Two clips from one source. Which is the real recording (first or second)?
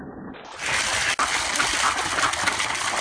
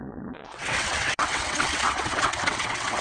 first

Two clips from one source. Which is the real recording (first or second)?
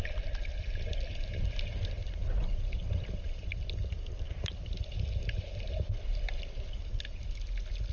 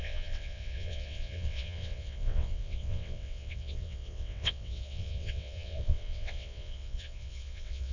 first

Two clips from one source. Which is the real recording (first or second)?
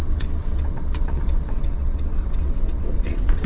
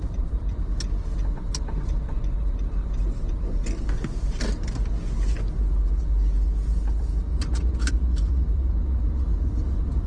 second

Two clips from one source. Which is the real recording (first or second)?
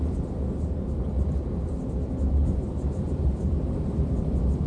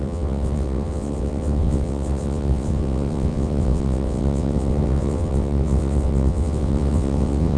first